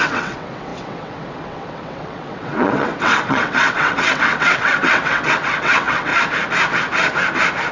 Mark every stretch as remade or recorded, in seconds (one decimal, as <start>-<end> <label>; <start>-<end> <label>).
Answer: 0.0-6.1 remade; 6.1-7.7 recorded